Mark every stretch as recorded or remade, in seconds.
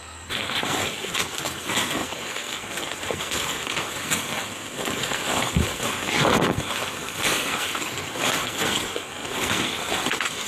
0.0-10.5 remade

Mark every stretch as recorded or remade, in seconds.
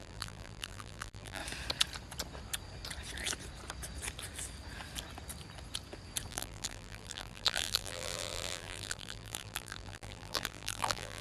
0.0-1.4 remade; 1.4-6.3 recorded; 6.3-11.2 remade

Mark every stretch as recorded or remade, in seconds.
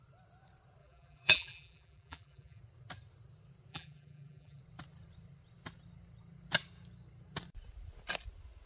0.0-0.8 recorded; 0.8-2.6 remade; 2.6-3.7 recorded; 3.7-4.6 remade; 4.6-8.7 recorded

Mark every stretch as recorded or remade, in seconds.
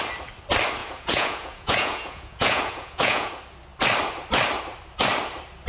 0.0-0.8 recorded; 0.8-3.3 remade; 3.3-5.7 recorded